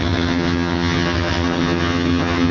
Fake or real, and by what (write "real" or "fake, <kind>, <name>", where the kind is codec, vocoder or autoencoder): fake, vocoder, HiFi-GAN